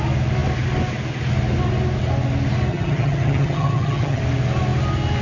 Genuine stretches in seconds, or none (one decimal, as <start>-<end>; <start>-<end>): 0.0-2.7; 4.2-5.2